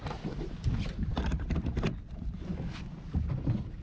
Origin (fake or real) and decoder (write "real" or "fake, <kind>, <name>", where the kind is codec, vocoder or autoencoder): fake, vocoder, BigVGAN v2